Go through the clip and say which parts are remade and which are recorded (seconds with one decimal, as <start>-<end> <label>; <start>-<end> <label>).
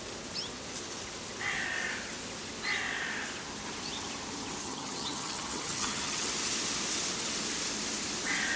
0.0-4.6 recorded; 4.6-6.3 remade; 6.3-8.6 recorded